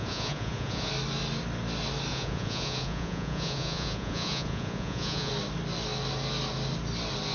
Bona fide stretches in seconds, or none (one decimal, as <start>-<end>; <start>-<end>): 0.9-2.1; 5.3-7.3